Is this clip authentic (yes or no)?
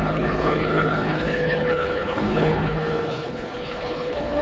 no